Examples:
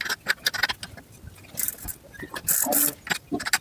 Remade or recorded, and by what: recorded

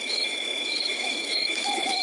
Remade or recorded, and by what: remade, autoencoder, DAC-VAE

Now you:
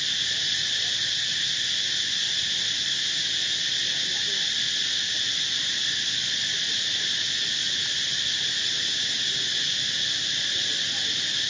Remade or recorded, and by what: recorded